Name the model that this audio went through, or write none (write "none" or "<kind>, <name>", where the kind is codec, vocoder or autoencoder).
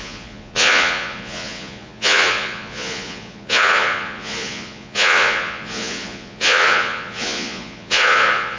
vocoder, Vocos